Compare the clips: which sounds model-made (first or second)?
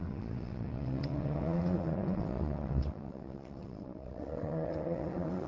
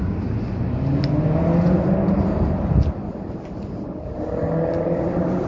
first